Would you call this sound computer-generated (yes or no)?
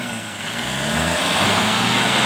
yes